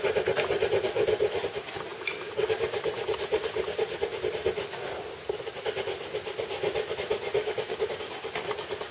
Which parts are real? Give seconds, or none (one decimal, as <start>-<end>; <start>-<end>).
0.0-7.4; 7.9-8.9